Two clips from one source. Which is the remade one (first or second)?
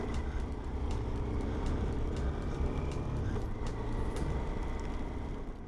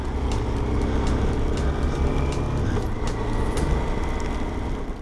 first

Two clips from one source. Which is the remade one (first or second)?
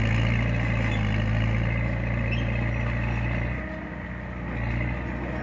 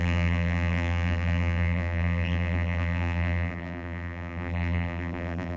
second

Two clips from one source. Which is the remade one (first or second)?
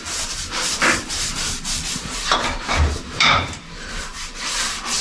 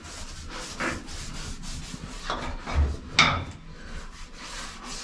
first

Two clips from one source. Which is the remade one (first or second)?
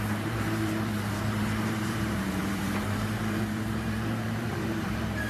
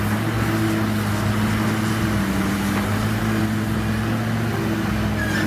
first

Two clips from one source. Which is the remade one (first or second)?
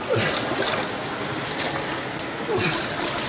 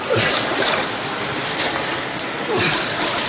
second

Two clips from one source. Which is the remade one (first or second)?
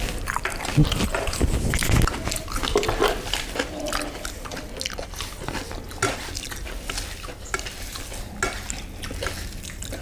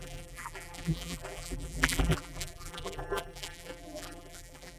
second